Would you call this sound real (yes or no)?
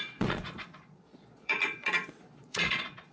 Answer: no